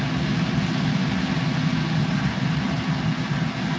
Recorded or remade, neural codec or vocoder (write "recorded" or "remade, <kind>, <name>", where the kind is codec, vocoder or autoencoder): recorded